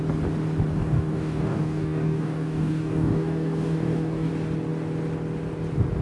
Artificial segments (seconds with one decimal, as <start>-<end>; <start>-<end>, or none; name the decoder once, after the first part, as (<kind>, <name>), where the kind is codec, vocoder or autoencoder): 0.7-4.3 (codec, DAC)